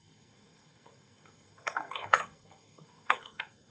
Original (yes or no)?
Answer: no